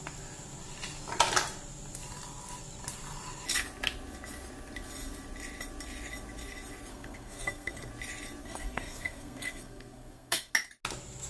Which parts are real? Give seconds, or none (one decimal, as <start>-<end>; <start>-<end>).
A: 0.0-6.9; 7.9-8.4; 10.5-11.3